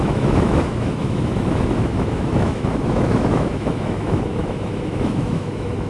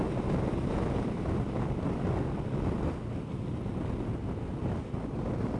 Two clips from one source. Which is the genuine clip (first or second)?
second